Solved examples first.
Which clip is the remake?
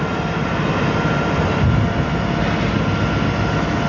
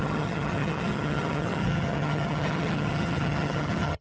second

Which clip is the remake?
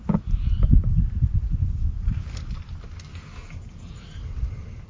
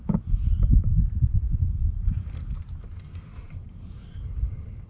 second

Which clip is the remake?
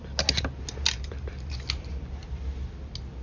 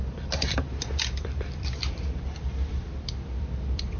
second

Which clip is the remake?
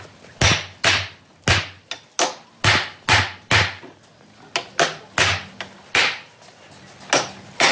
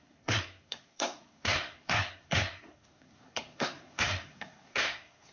second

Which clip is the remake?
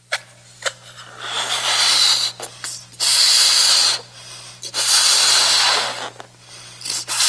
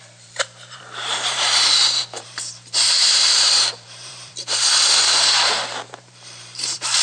second